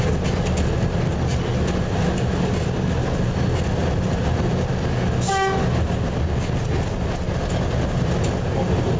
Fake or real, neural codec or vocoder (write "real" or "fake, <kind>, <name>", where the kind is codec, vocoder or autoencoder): real